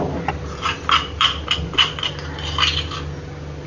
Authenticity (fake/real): fake